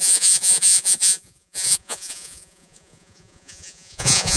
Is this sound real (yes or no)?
no